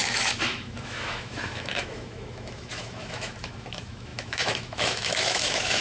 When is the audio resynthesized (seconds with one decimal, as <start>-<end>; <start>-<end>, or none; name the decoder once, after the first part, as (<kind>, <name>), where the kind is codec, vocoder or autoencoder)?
0.0-5.8 (autoencoder, DAC-VAE)